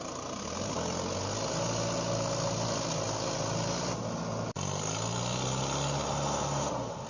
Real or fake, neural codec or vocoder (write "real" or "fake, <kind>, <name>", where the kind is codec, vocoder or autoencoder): real